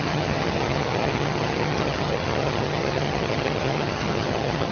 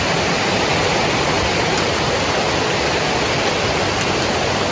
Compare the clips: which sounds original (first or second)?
second